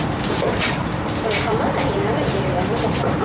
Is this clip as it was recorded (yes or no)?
no